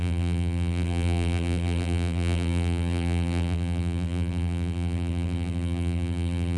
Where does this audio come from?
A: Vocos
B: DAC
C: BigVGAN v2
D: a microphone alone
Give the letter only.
C